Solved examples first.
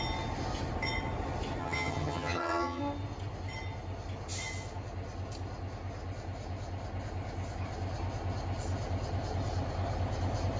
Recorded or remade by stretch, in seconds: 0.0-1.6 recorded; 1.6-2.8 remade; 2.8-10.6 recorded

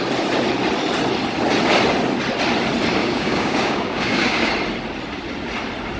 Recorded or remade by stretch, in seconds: 0.0-3.0 recorded; 3.0-4.5 remade; 4.5-6.0 recorded

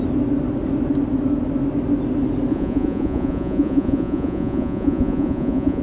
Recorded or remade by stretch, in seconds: 0.0-2.5 recorded; 2.5-5.8 remade

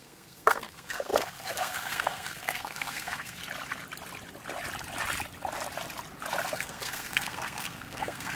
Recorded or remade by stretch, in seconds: 0.0-3.4 remade; 3.4-6.5 recorded; 6.5-8.4 remade

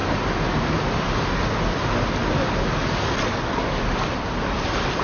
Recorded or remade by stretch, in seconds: 0.0-5.0 recorded

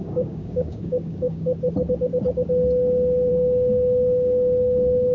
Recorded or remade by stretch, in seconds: 0.0-1.5 remade; 1.5-3.3 recorded; 3.3-5.1 remade

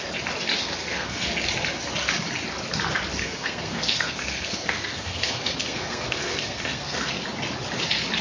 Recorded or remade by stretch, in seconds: 0.0-0.6 recorded; 0.6-1.3 remade; 1.3-3.2 recorded; 3.2-7.1 remade; 7.1-8.2 recorded